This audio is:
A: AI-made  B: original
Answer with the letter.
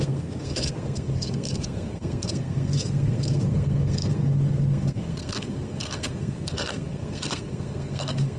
A